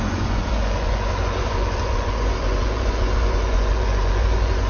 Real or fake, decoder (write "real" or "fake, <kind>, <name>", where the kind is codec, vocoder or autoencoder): fake, vocoder, Vocos